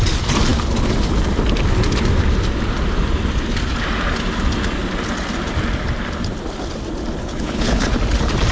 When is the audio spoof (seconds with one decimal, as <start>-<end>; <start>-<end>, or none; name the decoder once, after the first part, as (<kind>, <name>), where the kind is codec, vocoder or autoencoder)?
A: 7.2-7.9 (codec, HILCodec)